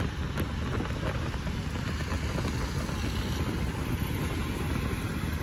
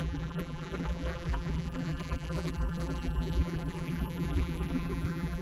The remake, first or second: second